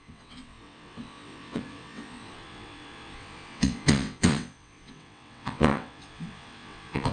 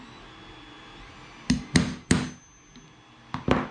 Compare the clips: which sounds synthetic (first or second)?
first